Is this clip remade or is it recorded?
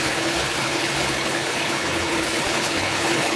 remade